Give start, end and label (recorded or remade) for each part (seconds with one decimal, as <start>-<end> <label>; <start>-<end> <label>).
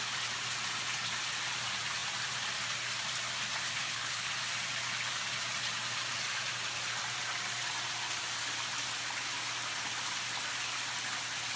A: 0.0-3.8 recorded; 3.8-4.3 remade; 4.3-11.6 recorded